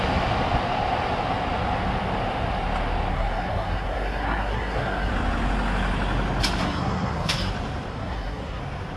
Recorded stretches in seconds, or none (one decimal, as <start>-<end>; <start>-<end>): 0.0-3.1; 5.1-6.6; 7.5-7.9; 8.6-9.0